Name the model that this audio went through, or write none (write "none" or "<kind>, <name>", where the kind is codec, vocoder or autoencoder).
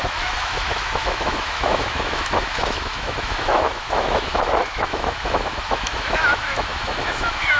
autoencoder, DAC-VAE